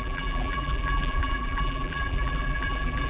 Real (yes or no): no